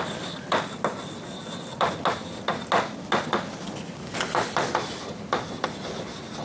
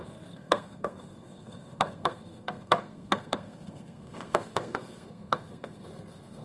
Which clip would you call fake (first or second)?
second